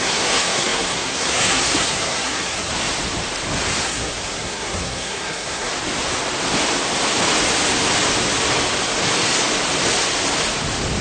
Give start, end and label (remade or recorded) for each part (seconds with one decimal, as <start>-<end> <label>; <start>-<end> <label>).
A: 0.0-2.7 remade; 2.7-3.8 recorded; 3.8-5.7 remade; 5.7-11.0 recorded